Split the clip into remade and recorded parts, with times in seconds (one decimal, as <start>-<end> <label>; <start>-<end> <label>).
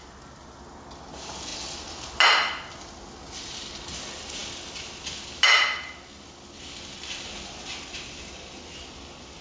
0.0-9.4 recorded